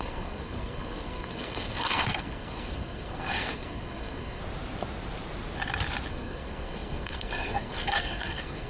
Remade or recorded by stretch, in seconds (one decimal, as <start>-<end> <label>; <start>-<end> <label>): 0.0-4.4 remade; 4.4-6.1 recorded; 6.1-8.7 remade